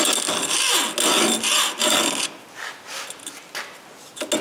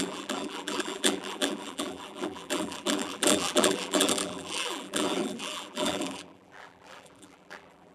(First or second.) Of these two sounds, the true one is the first